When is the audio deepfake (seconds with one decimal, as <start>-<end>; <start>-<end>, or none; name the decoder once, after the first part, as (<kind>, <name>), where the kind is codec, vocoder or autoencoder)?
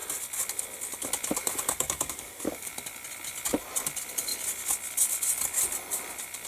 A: 1.4-2.7 (codec, DAC)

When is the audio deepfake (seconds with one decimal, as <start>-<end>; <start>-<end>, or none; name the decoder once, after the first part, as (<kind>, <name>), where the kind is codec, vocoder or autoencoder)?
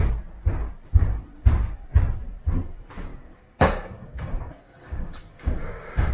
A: 3.1-6.1 (codec, DAC)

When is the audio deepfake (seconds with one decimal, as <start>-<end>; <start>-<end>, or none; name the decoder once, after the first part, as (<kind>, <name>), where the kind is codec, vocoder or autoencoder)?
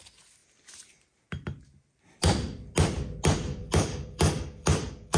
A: 3.6-5.2 (codec, DAC)